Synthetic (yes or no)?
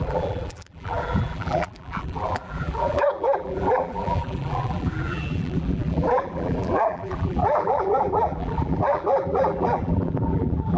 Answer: yes